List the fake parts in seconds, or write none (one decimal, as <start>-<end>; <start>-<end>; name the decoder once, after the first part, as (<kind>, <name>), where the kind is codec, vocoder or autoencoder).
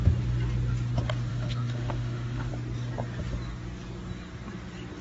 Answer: 1.3-2.5 (autoencoder, DAC-VAE)